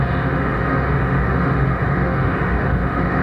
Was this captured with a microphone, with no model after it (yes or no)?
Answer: no